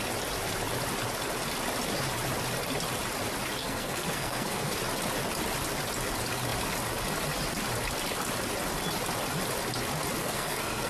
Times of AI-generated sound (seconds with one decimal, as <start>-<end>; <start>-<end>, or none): 3.6-4.7; 10.2-10.9